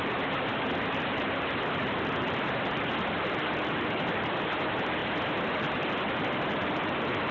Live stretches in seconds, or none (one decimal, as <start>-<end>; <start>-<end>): 0.0-7.3